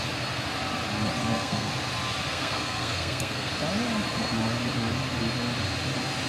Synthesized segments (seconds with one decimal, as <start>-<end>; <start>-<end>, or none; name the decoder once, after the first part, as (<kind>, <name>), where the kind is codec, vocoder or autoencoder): 1.2-1.7 (codec, SNAC); 2.3-3.5